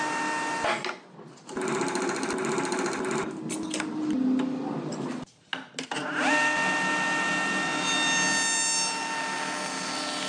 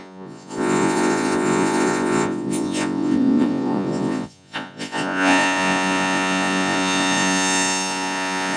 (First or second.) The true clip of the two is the first